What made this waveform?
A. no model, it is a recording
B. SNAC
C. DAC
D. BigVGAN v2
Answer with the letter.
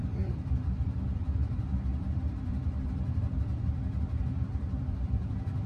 D